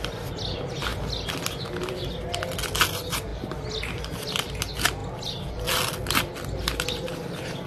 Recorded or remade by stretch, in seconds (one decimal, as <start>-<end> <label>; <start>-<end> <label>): 0.0-7.7 recorded